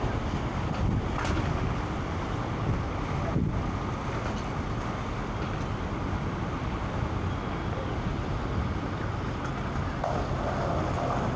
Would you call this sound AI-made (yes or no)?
no